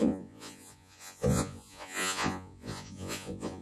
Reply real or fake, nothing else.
fake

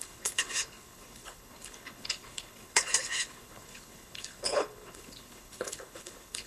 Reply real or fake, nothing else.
fake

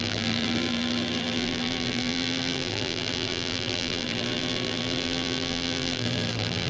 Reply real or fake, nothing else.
fake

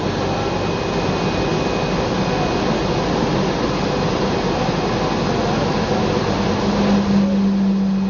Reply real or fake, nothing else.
real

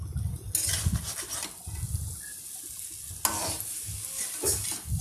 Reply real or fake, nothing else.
real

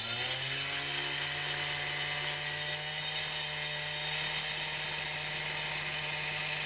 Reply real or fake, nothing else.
real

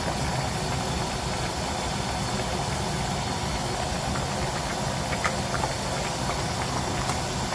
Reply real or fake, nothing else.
real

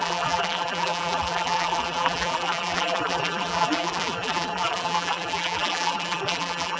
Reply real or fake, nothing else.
fake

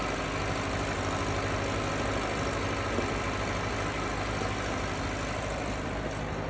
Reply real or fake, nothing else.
real